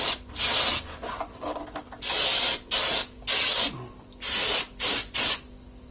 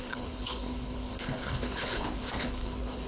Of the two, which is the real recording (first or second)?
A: first